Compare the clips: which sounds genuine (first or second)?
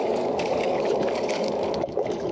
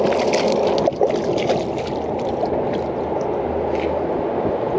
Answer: second